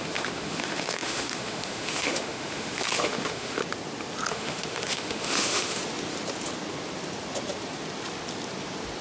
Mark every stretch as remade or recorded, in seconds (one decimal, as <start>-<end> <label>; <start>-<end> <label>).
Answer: 0.0-3.6 remade; 3.6-4.3 recorded; 4.3-5.8 remade; 5.8-9.0 recorded